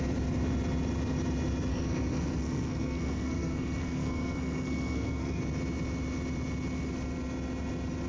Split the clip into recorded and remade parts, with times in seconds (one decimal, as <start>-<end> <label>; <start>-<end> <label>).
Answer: 0.0-1.7 recorded; 1.7-5.4 remade; 5.4-8.1 recorded